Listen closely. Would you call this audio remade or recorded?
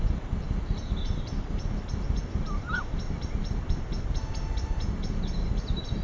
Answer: recorded